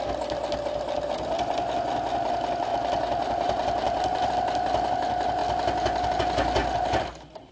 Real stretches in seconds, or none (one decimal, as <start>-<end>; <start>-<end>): 0.0-2.7; 4.3-6.6